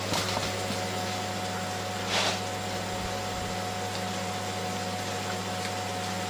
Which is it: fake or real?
real